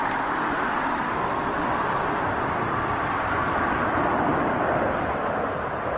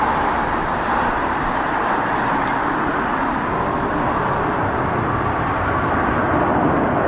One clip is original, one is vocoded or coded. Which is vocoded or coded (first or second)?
first